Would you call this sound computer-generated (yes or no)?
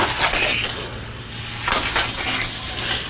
no